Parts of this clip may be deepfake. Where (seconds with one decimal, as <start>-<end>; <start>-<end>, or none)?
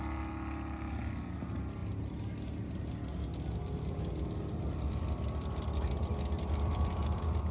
none